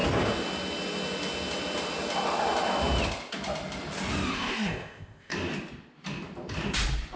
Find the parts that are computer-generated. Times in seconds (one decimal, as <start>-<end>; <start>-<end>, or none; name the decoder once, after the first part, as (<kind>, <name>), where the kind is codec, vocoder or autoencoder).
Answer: 4.3-5.3 (codec, ZipCodec)